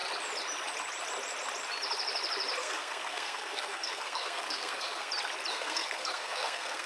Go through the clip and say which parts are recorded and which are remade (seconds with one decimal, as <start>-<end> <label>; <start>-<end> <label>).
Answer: 0.0-2.6 recorded; 2.6-5.1 remade; 5.1-5.5 recorded; 5.5-6.9 remade